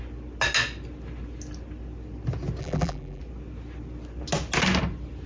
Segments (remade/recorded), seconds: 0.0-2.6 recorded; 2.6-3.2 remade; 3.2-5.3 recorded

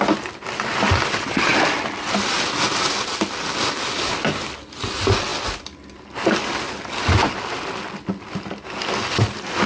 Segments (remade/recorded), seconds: 0.0-9.7 recorded